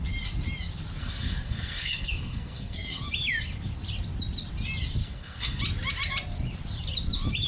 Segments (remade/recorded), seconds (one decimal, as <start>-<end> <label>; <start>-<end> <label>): 0.0-1.0 recorded; 1.0-3.0 remade; 3.0-5.0 recorded; 5.0-5.6 remade; 5.6-7.5 recorded